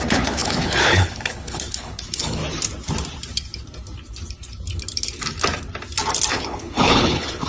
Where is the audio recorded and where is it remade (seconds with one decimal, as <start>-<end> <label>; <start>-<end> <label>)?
0.0-2.4 remade; 2.4-6.3 recorded; 6.3-7.5 remade